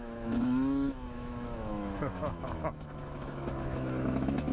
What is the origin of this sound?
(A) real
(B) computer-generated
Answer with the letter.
B